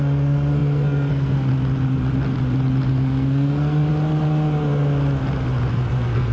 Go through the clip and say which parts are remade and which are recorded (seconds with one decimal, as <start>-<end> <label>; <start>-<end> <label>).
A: 0.0-1.5 remade; 1.5-2.9 recorded; 2.9-3.9 remade; 3.9-5.7 recorded; 5.7-6.3 remade